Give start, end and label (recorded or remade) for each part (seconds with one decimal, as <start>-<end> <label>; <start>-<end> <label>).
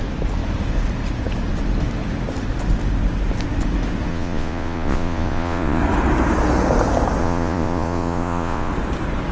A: 0.0-4.1 recorded; 4.1-5.8 remade; 5.8-7.2 recorded; 7.2-8.7 remade; 8.7-9.3 recorded